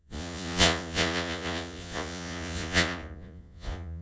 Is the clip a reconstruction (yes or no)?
yes